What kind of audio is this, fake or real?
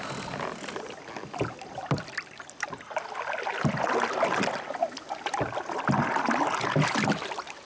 real